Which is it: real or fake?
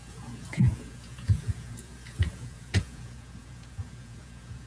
fake